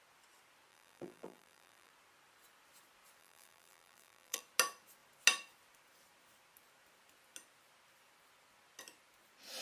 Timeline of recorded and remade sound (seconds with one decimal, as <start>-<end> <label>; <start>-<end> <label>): 0.0-0.7 recorded; 0.7-1.9 remade; 1.9-3.2 recorded; 3.2-4.4 remade; 4.4-9.6 recorded